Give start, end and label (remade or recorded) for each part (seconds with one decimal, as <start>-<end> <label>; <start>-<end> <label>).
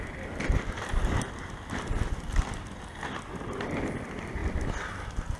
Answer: 0.0-5.4 recorded